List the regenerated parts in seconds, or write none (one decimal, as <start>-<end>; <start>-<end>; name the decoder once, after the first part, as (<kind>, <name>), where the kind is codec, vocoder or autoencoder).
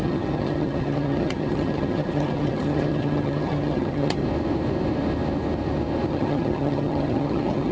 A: 0.0-4.2 (vocoder, HiFi-GAN); 6.1-7.7